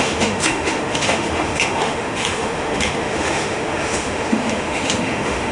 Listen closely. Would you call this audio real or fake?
fake